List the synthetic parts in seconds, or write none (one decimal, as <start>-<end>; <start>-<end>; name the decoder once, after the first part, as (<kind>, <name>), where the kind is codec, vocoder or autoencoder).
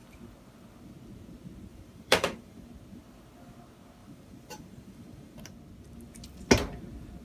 1.7-2.7 (vocoder, BigVGAN v2); 4.0-5.4